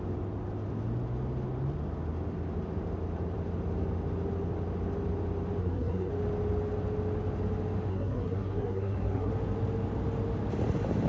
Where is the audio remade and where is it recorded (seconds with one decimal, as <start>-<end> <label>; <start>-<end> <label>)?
0.0-5.6 recorded; 5.6-6.1 remade; 6.1-7.9 recorded; 7.9-9.3 remade; 9.3-11.1 recorded

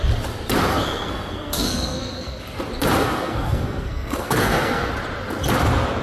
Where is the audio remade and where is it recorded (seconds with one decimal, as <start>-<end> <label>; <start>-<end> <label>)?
0.0-0.7 recorded; 0.7-2.4 remade; 2.4-3.0 recorded; 3.0-4.9 remade; 4.9-6.0 recorded

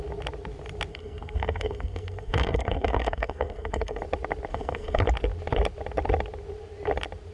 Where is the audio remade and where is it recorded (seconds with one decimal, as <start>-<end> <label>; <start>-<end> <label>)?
0.0-0.9 recorded; 0.9-4.0 remade; 4.0-4.5 recorded; 4.5-5.0 remade; 5.0-7.3 recorded